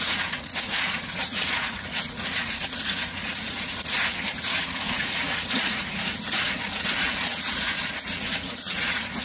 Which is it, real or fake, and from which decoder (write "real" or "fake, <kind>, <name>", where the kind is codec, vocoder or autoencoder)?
fake, vocoder, Vocos